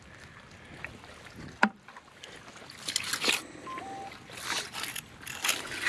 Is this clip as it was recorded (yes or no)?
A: yes